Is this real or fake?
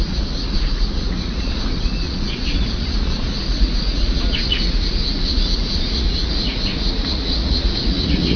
fake